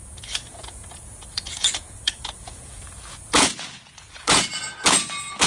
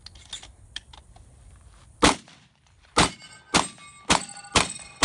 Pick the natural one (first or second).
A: second